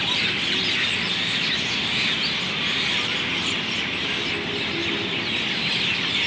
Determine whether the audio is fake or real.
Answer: real